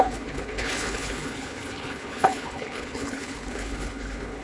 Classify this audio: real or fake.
fake